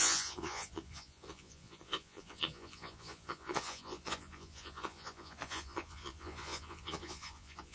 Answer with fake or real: fake